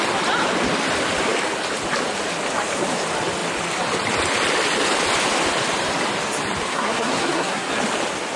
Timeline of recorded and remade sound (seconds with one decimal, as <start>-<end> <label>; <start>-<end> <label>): 0.0-6.7 recorded; 6.7-7.7 remade; 7.7-8.4 recorded